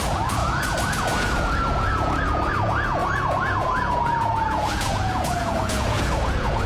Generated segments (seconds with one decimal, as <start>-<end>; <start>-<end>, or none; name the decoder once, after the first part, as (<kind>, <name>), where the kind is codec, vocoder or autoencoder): 0.0-6.7 (vocoder, Vocos)